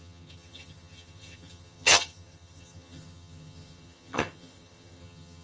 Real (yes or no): no